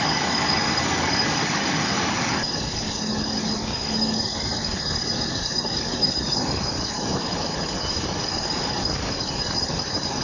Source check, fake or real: fake